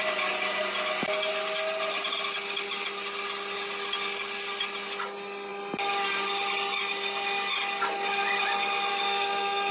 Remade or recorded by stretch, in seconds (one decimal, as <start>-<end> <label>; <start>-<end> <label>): 0.0-8.9 recorded; 8.9-9.7 remade

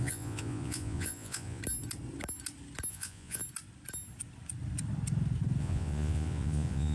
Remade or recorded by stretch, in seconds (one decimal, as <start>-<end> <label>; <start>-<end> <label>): 0.0-1.6 remade; 1.6-2.9 recorded; 2.9-3.4 remade; 3.4-5.6 recorded; 5.6-6.9 remade